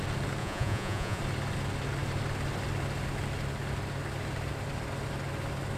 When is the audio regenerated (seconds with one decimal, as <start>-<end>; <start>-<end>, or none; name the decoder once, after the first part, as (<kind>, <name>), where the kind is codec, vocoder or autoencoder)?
0.4-1.2 (vocoder, Vocos)